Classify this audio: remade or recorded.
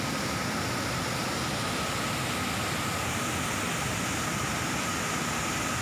recorded